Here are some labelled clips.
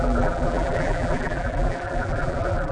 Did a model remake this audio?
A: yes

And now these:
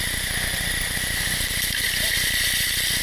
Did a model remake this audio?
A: no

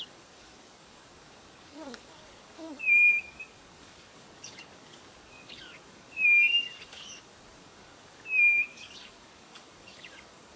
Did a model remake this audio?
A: yes